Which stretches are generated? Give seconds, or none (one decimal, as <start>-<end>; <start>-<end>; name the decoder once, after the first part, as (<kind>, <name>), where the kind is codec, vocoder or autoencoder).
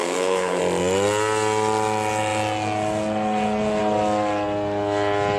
0.0-0.6 (codec, SNAC)